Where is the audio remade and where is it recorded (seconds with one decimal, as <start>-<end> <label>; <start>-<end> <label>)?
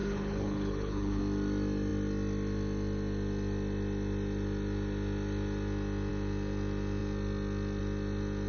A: 0.0-1.2 remade; 1.2-8.5 recorded